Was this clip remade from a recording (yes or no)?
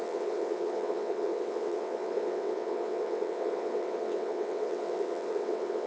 yes